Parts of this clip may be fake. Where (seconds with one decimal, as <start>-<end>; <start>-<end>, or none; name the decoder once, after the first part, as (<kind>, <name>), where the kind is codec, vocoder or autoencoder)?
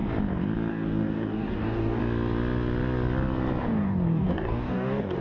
0.7-2.0 (codec, DAC); 3.6-5.2